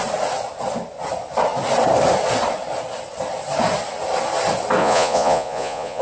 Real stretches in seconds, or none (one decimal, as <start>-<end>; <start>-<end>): 0.0-4.8